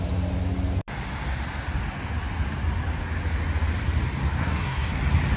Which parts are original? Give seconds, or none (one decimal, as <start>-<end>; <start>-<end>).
0.0-4.4; 5.0-5.4

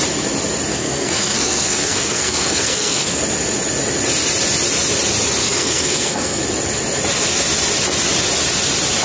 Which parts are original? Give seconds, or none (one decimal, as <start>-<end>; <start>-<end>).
0.0-0.7; 3.2-5.4; 6.4-9.0

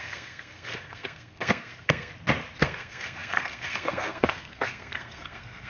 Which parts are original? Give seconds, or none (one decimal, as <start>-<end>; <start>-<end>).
2.1-2.6

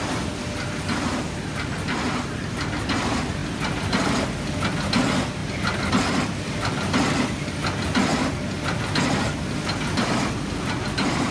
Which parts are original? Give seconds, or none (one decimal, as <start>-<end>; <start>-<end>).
0.0-11.3

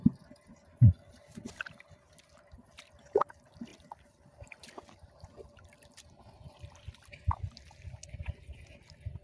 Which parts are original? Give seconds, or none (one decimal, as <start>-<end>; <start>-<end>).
0.0-9.2

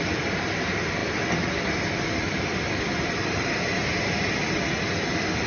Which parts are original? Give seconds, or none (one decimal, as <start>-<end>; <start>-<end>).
0.0-5.5

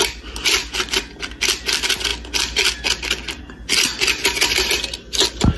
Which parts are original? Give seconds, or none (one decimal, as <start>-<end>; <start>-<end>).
0.0-5.6

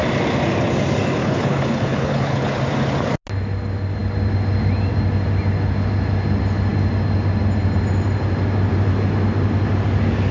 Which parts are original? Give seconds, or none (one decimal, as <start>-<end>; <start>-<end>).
0.0-1.2; 2.5-10.3